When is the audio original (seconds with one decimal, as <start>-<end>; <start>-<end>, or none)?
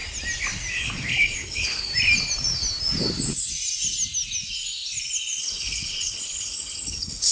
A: 0.0-0.7; 1.9-5.4